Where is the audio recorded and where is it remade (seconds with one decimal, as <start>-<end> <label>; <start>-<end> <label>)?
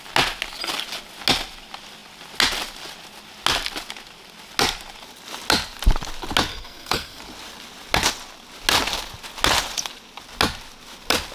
0.0-6.5 recorded; 6.5-7.2 remade; 7.2-11.3 recorded